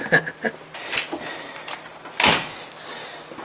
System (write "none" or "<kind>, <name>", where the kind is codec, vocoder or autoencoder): none